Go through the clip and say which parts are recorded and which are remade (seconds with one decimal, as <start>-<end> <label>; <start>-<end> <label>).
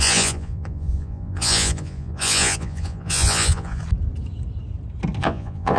0.0-3.8 remade; 3.8-5.2 recorded; 5.2-5.8 remade